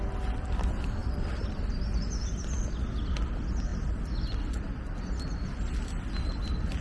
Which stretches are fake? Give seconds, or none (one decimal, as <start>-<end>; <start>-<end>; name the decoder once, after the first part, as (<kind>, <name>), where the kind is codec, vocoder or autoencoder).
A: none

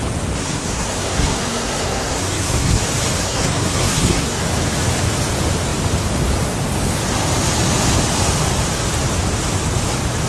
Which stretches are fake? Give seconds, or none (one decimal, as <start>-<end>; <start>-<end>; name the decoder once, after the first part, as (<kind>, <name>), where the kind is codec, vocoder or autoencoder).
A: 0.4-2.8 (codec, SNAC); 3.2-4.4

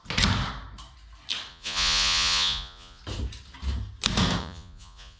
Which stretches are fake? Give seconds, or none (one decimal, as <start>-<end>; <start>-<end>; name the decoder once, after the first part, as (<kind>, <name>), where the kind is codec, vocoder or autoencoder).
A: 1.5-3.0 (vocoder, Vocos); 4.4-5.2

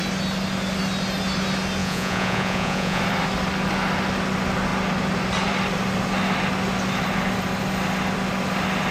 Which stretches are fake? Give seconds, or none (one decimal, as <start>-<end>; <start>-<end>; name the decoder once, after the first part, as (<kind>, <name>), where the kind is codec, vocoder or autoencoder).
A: 1.8-3.0 (vocoder, Vocos)

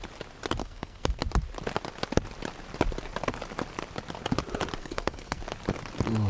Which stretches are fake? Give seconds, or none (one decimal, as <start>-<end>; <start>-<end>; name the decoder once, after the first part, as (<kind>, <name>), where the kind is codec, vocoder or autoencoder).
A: 0.6-1.2 (codec, SNAC); 4.8-5.4

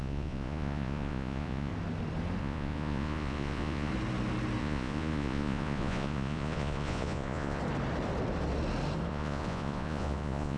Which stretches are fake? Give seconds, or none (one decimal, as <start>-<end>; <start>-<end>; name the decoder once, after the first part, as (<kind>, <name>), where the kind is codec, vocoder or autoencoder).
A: 0.0-1.7 (vocoder, Vocos); 2.4-3.9; 4.6-7.6; 9.1-10.6

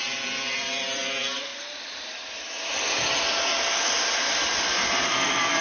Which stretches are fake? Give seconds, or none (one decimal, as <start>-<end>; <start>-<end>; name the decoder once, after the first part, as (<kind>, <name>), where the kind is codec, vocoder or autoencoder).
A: 0.0-1.5 (vocoder, BigVGAN v2); 2.0-3.5; 4.2-5.6

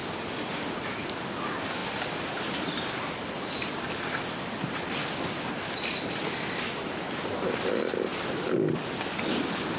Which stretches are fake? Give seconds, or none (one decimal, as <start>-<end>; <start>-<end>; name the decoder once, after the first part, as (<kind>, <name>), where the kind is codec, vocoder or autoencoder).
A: none